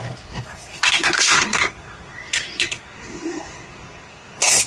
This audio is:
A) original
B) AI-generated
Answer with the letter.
B